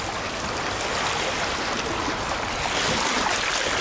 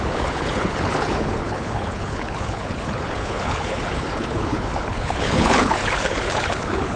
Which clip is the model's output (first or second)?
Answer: second